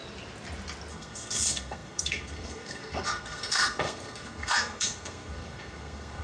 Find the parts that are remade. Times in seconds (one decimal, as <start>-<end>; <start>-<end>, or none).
0.9-6.2